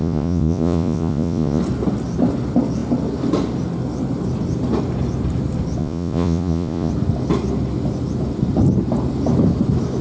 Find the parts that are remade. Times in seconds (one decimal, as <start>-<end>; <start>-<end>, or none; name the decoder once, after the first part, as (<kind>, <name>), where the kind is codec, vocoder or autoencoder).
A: 0.0-1.6 (vocoder, Vocos); 5.8-6.9